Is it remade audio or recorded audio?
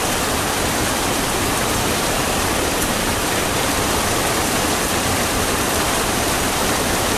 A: remade